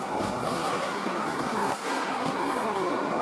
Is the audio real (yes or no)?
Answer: no